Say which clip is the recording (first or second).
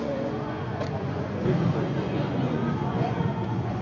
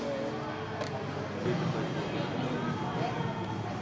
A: second